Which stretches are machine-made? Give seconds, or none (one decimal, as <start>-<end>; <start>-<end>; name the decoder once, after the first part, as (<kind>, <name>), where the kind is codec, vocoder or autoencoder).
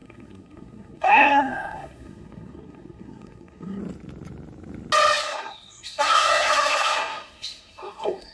0.0-3.8 (codec, SNAC); 5.2-8.3